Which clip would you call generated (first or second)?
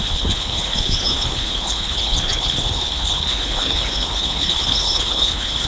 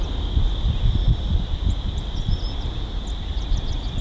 first